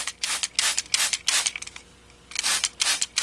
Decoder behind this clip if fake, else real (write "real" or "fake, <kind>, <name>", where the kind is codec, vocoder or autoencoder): real